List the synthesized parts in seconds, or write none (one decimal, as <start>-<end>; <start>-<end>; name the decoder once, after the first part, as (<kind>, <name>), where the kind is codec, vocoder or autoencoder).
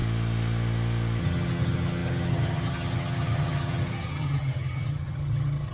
1.2-5.7 (vocoder, HiFi-GAN)